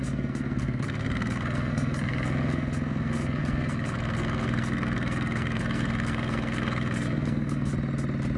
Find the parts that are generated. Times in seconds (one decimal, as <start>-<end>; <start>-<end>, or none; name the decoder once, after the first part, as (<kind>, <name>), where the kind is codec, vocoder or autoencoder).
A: 0.0-7.7 (codec, SNAC)